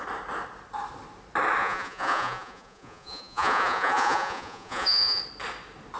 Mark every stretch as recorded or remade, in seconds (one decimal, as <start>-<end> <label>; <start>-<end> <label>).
0.0-1.6 recorded; 1.6-5.2 remade; 5.2-6.0 recorded